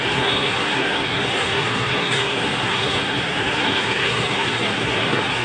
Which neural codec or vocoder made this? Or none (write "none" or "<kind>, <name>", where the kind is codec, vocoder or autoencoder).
codec, SNAC